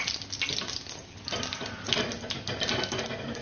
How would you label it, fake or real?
real